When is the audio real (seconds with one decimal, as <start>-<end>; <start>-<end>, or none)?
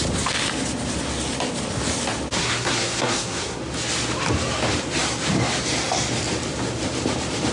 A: 0.0-2.4; 3.6-7.5